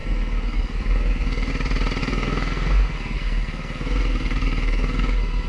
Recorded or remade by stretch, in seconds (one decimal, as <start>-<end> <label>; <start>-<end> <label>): 0.0-1.5 remade; 1.5-2.0 recorded; 2.0-5.5 remade